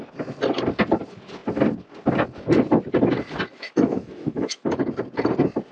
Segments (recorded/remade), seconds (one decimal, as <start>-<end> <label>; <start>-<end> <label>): 0.0-3.5 recorded; 3.5-4.8 remade; 4.8-5.7 recorded